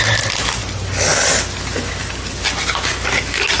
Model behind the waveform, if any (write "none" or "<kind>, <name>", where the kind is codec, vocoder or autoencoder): none